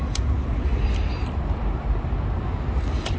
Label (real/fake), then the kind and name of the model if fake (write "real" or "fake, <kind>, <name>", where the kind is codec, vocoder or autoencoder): real